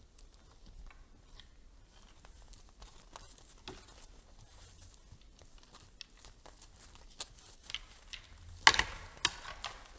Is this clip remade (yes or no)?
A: no